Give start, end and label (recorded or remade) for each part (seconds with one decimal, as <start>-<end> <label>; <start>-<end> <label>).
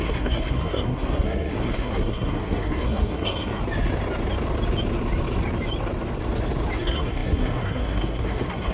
0.0-3.6 remade; 3.6-6.8 recorded; 6.8-8.7 remade